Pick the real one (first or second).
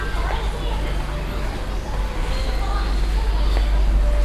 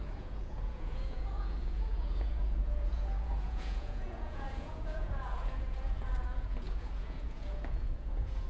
first